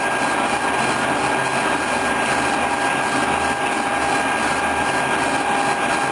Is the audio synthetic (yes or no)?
no